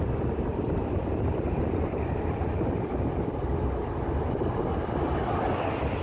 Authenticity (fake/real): real